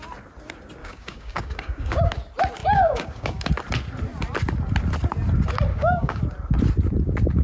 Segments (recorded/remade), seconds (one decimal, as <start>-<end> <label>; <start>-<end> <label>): 0.0-0.8 recorded; 0.8-2.1 remade; 2.1-2.6 recorded; 2.6-3.5 remade; 3.5-5.7 recorded; 5.7-6.2 remade; 6.2-7.4 recorded